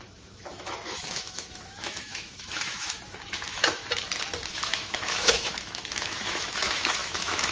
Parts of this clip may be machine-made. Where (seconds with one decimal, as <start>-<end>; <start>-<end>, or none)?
0.0-3.8; 4.5-7.5